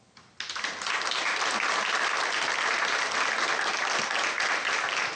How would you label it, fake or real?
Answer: real